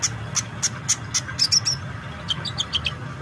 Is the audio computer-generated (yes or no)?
no